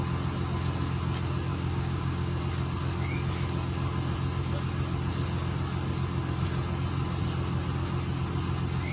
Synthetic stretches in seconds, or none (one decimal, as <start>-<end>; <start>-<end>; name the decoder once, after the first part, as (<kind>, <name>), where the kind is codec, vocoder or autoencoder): 1.5-2.4 (codec, DAC)